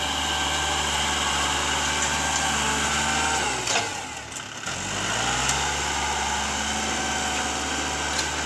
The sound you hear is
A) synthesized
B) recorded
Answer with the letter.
B